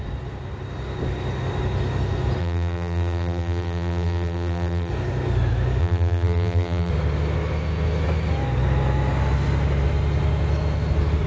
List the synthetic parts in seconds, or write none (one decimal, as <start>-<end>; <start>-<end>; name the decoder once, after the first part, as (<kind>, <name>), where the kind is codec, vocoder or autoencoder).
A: 2.4-4.9 (vocoder, BigVGAN v2); 5.8-6.9